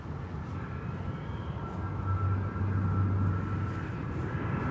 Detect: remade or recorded recorded